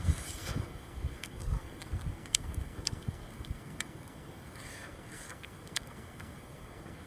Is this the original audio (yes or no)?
no